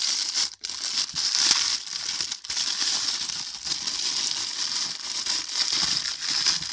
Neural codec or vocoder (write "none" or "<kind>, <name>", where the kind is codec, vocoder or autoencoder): none